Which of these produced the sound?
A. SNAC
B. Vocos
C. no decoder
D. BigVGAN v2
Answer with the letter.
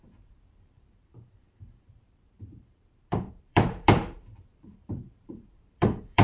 D